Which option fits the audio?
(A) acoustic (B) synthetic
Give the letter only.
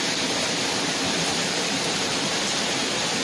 A